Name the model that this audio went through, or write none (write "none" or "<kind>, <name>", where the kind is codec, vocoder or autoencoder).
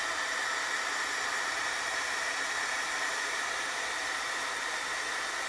none